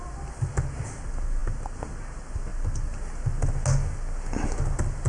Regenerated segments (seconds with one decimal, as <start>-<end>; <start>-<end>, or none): none